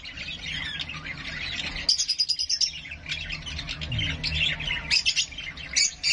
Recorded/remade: recorded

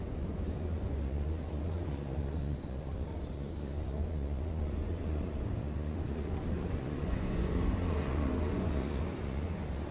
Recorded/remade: remade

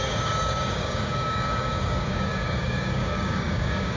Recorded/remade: remade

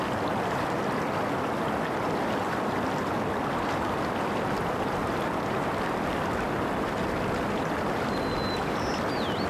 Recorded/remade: recorded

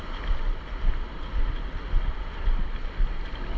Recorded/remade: recorded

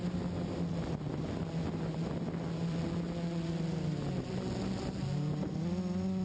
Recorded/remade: recorded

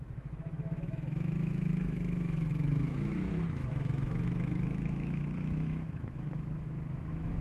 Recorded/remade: remade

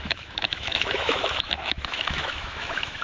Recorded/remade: remade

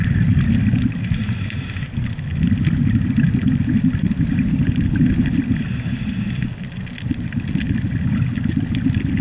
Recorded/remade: recorded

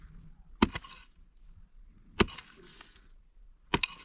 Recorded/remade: recorded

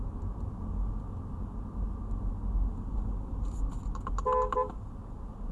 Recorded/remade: recorded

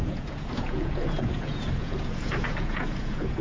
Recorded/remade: remade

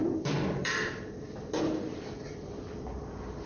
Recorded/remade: remade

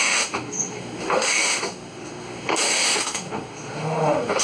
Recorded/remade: remade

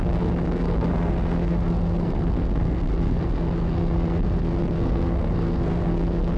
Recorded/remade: remade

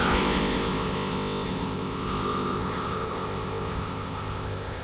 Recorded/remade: remade